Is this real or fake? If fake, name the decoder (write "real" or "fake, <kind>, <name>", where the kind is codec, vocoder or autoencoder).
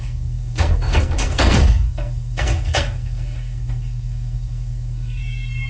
fake, codec, SNAC